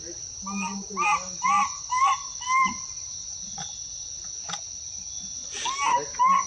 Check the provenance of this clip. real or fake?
real